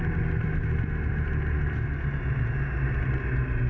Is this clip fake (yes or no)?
no